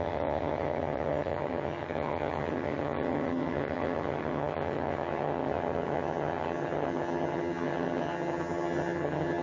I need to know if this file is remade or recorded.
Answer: remade